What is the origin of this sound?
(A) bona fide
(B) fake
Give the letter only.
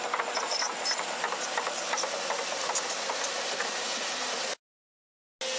A